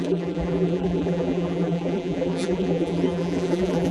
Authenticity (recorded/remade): remade